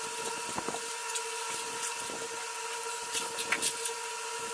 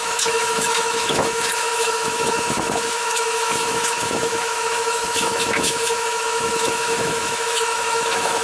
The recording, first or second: first